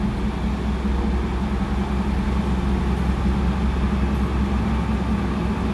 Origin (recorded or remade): recorded